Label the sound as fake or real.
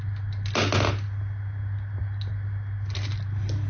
real